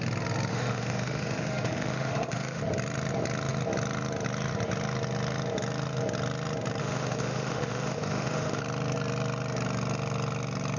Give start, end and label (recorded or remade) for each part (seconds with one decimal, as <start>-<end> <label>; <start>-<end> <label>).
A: 0.0-0.5 recorded; 0.5-2.6 remade; 2.6-6.8 recorded; 6.8-8.6 remade; 8.6-10.8 recorded